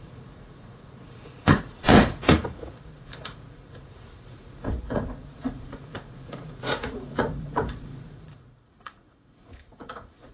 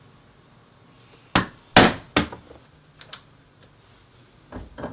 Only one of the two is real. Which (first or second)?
second